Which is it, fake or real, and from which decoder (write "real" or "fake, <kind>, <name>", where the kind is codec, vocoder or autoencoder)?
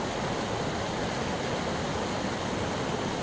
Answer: real